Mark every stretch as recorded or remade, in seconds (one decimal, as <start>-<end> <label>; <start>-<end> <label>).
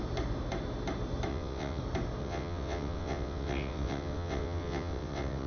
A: 0.0-1.3 recorded; 1.3-1.8 remade; 1.8-2.2 recorded; 2.2-5.5 remade